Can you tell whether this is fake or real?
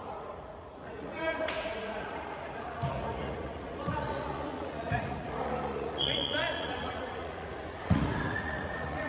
fake